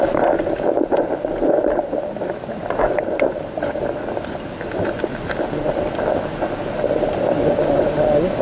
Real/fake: real